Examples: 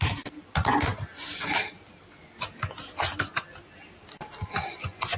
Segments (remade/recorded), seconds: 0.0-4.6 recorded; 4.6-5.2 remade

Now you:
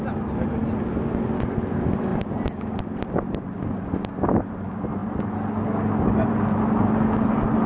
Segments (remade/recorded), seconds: 0.0-7.7 recorded

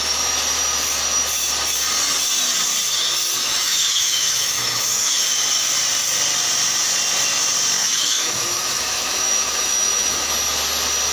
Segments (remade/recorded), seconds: 0.0-3.4 recorded; 3.4-5.3 remade; 5.3-7.8 recorded; 7.8-10.3 remade; 10.3-11.1 recorded

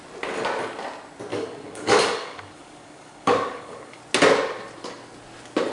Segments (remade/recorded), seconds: 0.0-1.3 recorded; 1.3-4.0 remade; 4.0-5.7 recorded

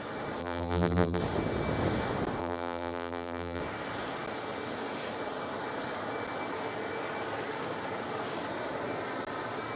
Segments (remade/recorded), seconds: 0.0-0.4 recorded; 0.4-1.2 remade; 1.2-2.4 recorded; 2.4-3.6 remade; 3.6-9.8 recorded

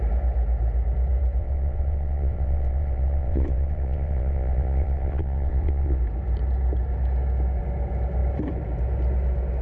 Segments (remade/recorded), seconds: 0.0-1.4 recorded; 1.4-6.0 remade; 6.0-9.6 recorded

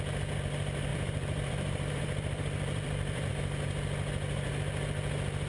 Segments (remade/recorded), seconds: 0.0-0.9 recorded; 0.9-3.3 remade; 3.3-5.5 recorded

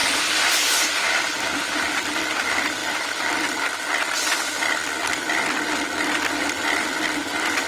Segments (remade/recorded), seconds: 0.0-0.8 remade; 0.8-2.8 recorded; 2.8-3.6 remade; 3.6-7.7 recorded